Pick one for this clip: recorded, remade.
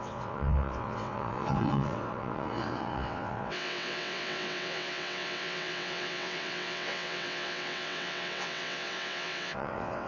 remade